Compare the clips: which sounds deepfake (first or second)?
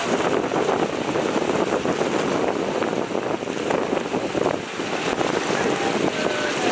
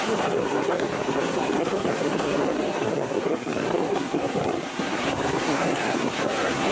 second